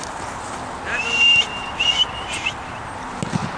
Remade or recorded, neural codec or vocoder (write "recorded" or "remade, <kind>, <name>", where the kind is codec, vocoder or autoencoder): recorded